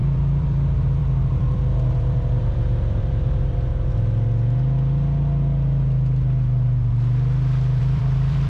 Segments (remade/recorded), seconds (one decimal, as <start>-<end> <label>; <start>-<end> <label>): 0.0-3.7 remade; 3.7-7.8 recorded; 7.8-8.5 remade